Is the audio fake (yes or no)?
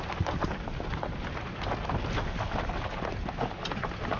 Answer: no